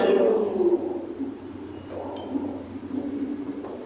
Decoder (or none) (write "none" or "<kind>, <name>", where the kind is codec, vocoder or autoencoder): vocoder, BigVGAN v2